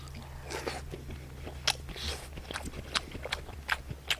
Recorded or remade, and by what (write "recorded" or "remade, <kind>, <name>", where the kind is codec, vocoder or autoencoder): recorded